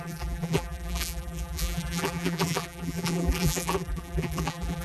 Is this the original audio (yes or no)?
no